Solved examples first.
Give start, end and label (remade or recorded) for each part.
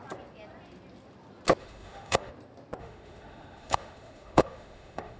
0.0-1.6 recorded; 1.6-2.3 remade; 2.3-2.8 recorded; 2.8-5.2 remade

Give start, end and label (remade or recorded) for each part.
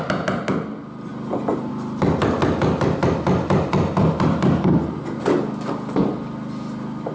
0.0-7.1 recorded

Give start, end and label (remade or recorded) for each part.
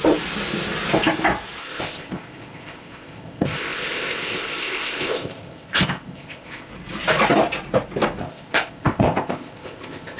0.0-1.6 recorded; 1.6-6.7 remade; 6.7-8.2 recorded; 8.2-10.2 remade